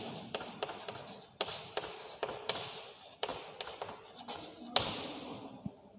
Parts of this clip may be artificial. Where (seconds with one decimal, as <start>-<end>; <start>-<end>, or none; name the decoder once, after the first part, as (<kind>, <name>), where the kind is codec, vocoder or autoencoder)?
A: none